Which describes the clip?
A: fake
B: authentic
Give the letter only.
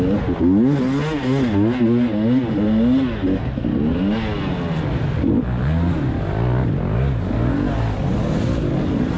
B